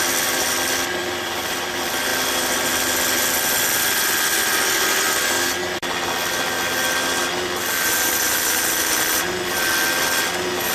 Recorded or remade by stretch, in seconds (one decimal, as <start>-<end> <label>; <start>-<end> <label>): 0.0-1.0 recorded; 1.0-1.7 remade; 1.7-10.7 recorded